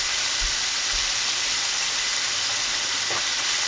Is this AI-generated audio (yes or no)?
no